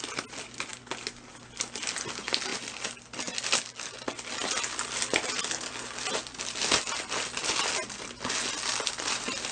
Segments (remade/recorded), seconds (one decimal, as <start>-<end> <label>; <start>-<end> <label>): 0.0-2.5 recorded; 2.5-3.2 remade; 3.2-9.5 recorded